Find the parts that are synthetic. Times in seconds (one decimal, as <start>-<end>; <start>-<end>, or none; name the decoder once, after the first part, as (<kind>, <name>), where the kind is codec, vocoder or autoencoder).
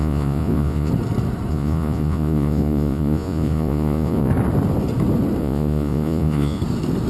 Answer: 0.0-0.9 (vocoder, Vocos); 1.5-4.3; 5.4-6.6